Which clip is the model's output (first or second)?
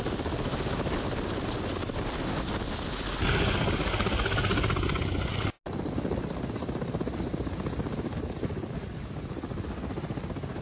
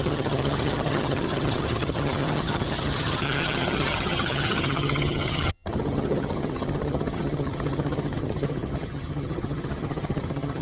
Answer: second